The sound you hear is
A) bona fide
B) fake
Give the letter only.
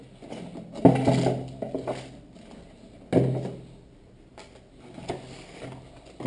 A